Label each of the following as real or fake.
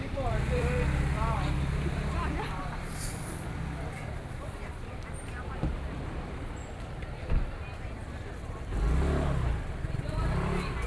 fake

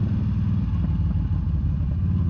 real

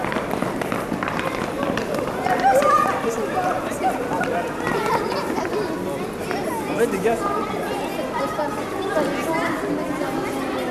real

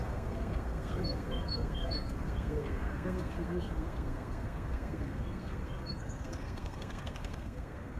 fake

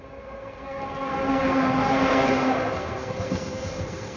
fake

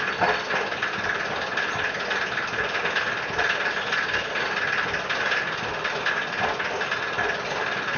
real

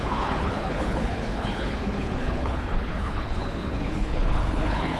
fake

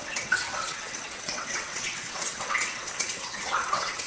fake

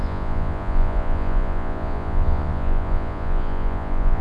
fake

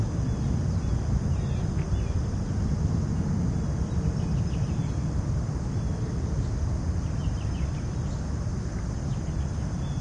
real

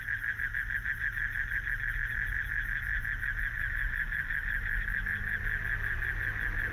real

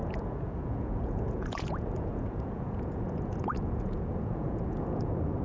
fake